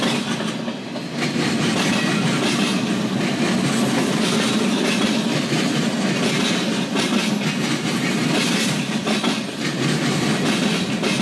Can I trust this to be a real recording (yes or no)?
yes